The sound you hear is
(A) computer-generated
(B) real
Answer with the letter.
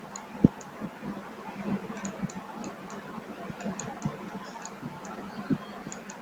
B